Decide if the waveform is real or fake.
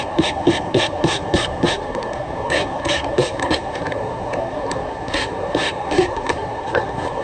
fake